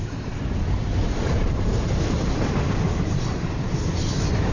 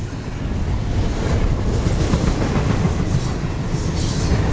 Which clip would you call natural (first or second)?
second